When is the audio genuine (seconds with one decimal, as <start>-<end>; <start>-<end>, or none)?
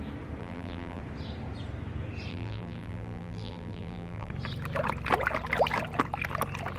0.0-0.4; 1.0-2.3; 4.3-6.8